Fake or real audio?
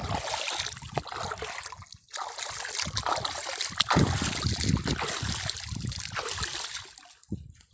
real